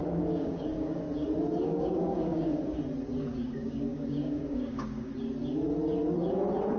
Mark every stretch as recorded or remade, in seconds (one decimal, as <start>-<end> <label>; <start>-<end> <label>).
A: 0.0-1.0 remade; 1.0-1.7 recorded; 1.7-2.8 remade; 2.8-3.4 recorded; 3.4-5.1 remade; 5.1-6.8 recorded